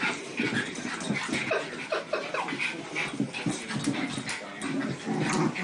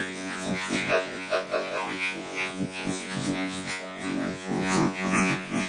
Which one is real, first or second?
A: first